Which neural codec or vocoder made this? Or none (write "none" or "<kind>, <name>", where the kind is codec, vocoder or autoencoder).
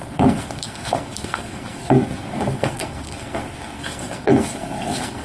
codec, SNAC